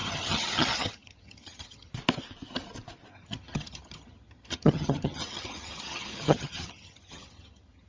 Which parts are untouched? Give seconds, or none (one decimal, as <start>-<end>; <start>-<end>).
1.9-3.1